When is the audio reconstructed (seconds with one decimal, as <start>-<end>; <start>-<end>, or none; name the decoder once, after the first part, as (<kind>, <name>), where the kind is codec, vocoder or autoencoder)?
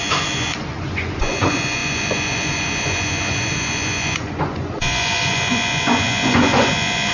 0.0-7.1 (vocoder, Vocos)